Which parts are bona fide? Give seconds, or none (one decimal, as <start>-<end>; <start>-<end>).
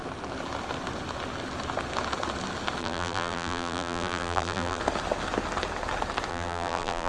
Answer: 0.0-2.8; 4.8-6.3